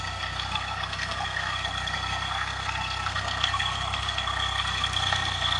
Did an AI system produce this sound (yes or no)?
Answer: yes